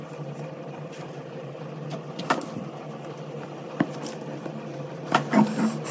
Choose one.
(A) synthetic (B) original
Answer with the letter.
B